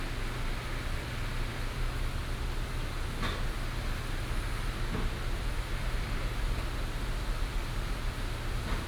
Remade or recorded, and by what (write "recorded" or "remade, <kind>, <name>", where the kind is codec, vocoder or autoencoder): recorded